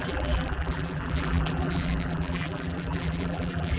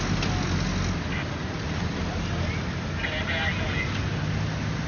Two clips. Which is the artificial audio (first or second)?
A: first